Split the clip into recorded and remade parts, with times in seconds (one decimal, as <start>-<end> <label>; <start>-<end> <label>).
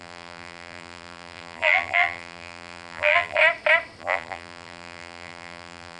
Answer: 0.0-3.4 remade; 3.4-4.0 recorded; 4.0-6.0 remade